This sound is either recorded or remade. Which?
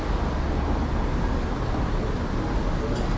recorded